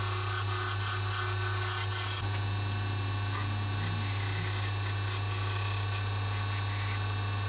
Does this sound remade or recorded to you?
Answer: recorded